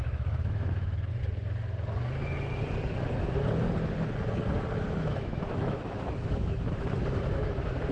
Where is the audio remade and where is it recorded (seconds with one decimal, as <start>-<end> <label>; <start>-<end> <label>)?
0.0-1.1 remade; 1.1-4.8 recorded; 4.8-7.9 remade